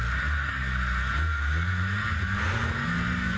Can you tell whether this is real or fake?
real